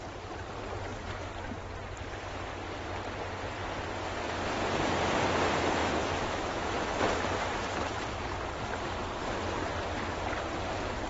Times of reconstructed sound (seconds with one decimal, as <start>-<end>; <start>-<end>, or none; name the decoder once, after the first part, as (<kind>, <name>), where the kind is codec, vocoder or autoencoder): 5.8-9.7 (vocoder, BigVGAN v2)